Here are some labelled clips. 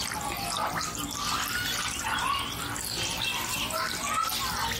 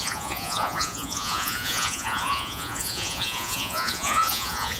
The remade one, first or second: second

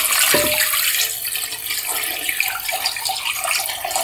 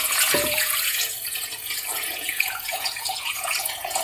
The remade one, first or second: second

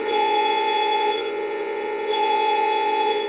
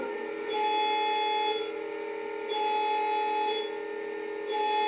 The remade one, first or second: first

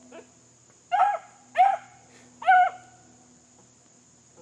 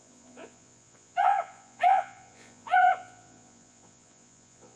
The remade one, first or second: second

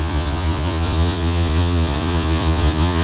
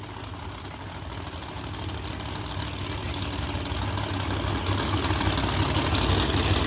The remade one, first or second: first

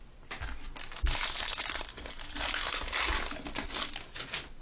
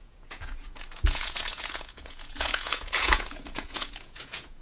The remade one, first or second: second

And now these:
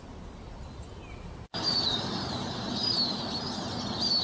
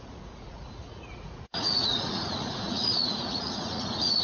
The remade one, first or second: second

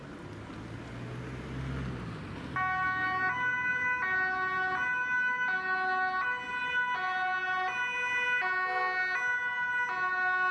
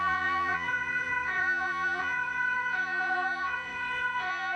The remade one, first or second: second